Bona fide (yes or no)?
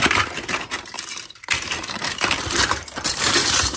no